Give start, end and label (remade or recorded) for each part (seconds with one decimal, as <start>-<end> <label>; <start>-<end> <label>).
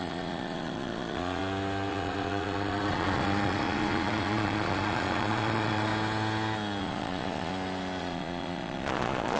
0.0-1.4 remade; 1.4-1.9 recorded; 1.9-5.9 remade; 5.9-6.8 recorded; 6.8-7.5 remade; 7.5-8.0 recorded; 8.0-9.4 remade